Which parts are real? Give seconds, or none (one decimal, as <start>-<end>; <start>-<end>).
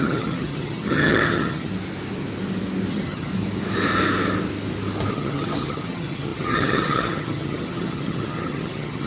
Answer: 1.7-2.9; 3.3-5.1